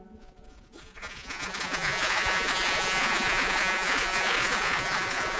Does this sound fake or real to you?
fake